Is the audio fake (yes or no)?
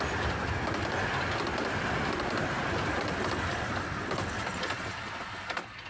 no